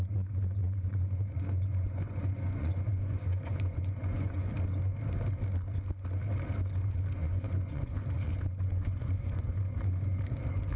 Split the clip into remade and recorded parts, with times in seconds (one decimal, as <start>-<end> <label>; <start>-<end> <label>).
0.0-0.6 recorded; 0.6-4.5 remade; 4.5-7.2 recorded; 7.2-10.2 remade; 10.2-10.8 recorded

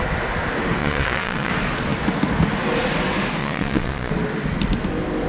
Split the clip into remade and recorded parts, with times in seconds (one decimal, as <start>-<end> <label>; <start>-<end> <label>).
0.0-0.8 recorded; 0.8-1.5 remade; 1.5-3.4 recorded; 3.4-4.1 remade; 4.1-5.3 recorded

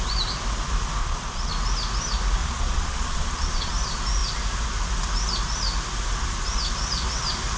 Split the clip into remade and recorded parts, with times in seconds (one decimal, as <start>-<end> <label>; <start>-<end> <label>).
0.0-1.0 recorded; 1.0-1.5 remade; 1.5-2.4 recorded; 2.4-3.7 remade; 3.7-7.6 recorded

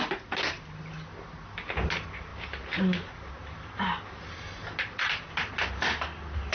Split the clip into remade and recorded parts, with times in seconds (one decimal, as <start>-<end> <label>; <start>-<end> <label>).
0.0-6.5 recorded

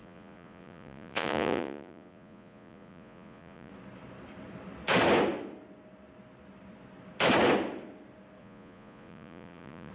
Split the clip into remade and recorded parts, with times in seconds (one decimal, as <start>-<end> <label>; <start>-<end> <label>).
0.0-3.7 remade; 3.7-8.4 recorded; 8.4-9.9 remade

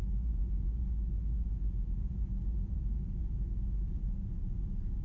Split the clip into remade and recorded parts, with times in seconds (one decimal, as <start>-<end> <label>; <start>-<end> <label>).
0.0-0.9 remade; 0.9-1.5 recorded; 1.5-2.8 remade; 2.8-5.0 recorded

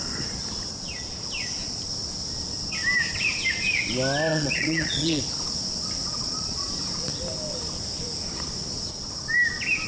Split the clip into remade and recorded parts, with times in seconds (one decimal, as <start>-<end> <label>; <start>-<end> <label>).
0.0-4.3 recorded; 4.3-5.2 remade; 5.2-6.1 recorded; 6.1-6.7 remade; 6.7-9.9 recorded

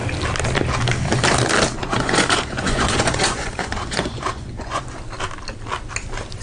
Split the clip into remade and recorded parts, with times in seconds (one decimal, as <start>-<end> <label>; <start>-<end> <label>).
0.0-1.8 recorded; 1.8-4.8 remade; 4.8-6.4 recorded